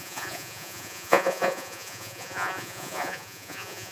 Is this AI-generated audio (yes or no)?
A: yes